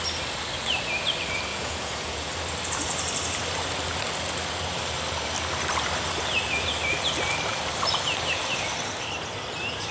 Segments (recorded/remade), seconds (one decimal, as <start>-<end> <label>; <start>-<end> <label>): 0.0-1.5 recorded; 1.5-2.3 remade; 2.3-9.9 recorded